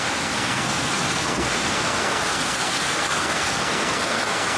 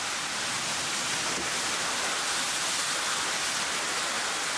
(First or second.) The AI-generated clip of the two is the first